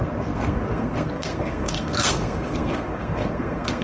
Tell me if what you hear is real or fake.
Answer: fake